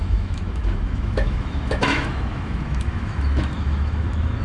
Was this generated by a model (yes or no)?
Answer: yes